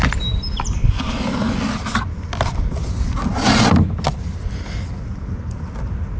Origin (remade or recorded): recorded